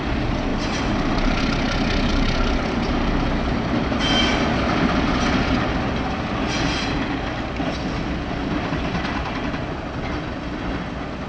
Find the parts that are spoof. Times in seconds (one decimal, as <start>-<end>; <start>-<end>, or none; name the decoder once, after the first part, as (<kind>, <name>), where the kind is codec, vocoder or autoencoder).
0.5-1.4 (vocoder, BigVGAN v2); 2.1-2.8